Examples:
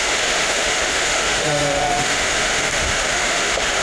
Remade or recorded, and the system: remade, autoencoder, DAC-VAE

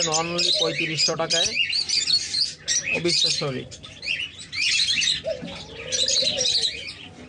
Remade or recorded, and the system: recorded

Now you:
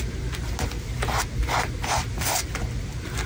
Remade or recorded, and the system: recorded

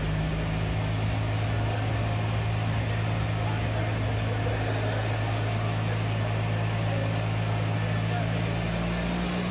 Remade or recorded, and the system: recorded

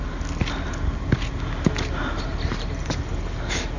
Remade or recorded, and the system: recorded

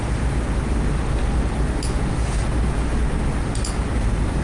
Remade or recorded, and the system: recorded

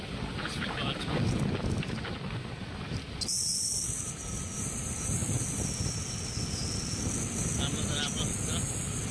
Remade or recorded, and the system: recorded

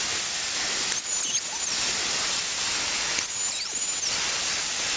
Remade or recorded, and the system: recorded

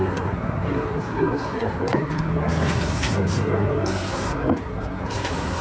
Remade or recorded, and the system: remade, codec, SNAC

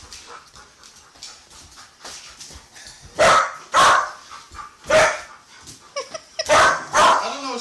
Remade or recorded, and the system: recorded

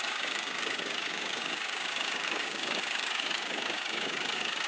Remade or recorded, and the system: remade, codec, DAC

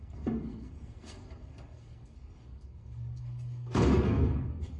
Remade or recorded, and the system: remade, codec, SNAC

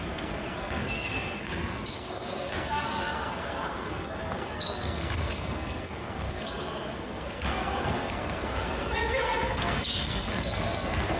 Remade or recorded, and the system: remade, codec, SNAC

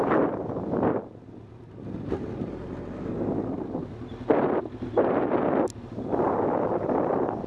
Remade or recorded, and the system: recorded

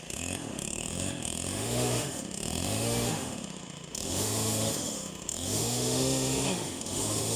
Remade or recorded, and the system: remade, autoencoder, DAC-VAE